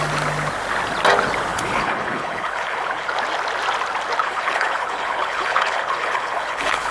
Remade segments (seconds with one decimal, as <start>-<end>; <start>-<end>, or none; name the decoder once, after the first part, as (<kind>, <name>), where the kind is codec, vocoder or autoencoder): 1.5-3.1 (codec, HILCodec); 4.2-6.9